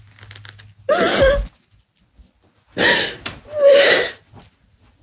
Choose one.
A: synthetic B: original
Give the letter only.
B